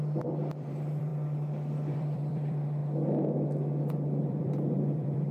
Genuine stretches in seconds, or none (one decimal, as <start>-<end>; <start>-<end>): 1.1-1.9; 2.8-4.3